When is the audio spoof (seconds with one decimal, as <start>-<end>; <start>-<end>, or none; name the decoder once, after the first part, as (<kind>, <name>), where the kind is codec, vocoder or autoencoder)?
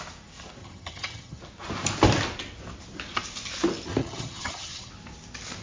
0.6-1.4 (vocoder, HiFi-GAN); 4.0-4.9